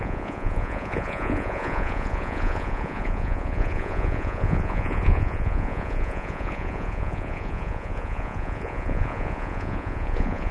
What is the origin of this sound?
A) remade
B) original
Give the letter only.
A